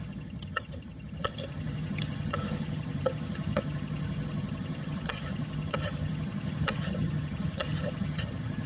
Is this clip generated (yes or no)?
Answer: yes